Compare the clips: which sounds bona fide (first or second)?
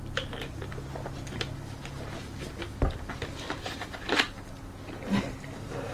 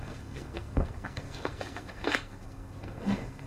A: first